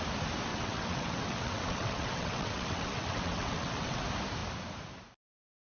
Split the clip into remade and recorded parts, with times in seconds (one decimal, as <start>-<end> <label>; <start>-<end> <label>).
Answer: 0.0-0.5 recorded; 0.5-4.0 remade; 4.0-5.8 recorded